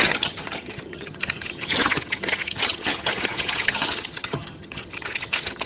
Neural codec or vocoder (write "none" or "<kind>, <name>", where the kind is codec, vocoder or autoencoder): vocoder, HiFi-GAN